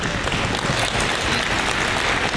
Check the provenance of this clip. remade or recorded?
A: recorded